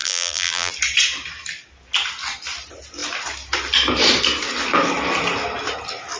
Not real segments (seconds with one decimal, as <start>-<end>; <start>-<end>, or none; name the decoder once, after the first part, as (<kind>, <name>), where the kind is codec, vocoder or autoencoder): 0.0-0.7 (vocoder, BigVGAN v2)